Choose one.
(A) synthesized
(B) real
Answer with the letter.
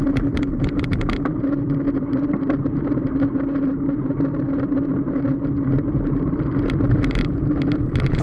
A